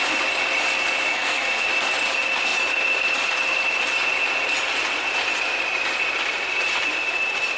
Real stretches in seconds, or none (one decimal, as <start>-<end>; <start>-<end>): 0.0-1.1; 1.7-7.6